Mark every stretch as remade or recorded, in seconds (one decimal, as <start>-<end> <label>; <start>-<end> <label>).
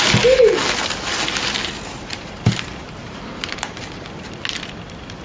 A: 0.0-2.1 recorded; 2.1-3.8 remade; 3.8-5.2 recorded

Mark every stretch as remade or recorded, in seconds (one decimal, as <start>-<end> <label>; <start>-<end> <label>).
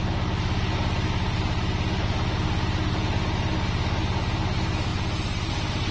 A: 0.0-4.9 recorded; 4.9-5.5 remade; 5.5-5.9 recorded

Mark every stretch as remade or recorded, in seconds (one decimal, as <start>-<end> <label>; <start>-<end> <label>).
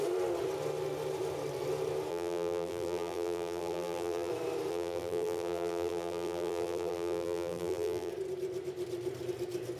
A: 0.0-2.1 recorded; 2.1-4.3 remade; 4.3-4.7 recorded; 4.7-8.1 remade; 8.1-9.8 recorded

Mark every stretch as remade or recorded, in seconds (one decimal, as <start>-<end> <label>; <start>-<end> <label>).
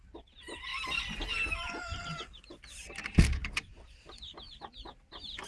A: 0.0-0.7 remade; 0.7-1.5 recorded; 1.5-3.4 remade; 3.4-3.9 recorded; 3.9-4.3 remade; 4.3-4.8 recorded; 4.8-5.5 remade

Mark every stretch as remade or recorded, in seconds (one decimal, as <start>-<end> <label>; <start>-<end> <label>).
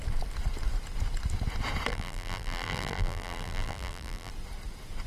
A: 0.0-1.9 recorded; 1.9-4.3 remade; 4.3-5.1 recorded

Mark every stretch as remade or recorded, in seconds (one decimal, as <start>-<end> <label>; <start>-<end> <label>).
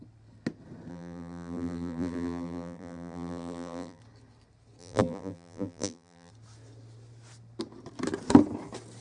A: 0.0-0.9 recorded; 0.9-4.0 remade; 4.0-4.8 recorded; 4.8-6.3 remade; 6.3-9.0 recorded